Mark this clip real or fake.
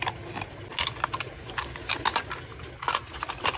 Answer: real